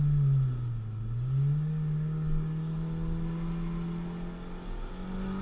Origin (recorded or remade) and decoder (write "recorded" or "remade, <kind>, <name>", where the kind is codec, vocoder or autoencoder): recorded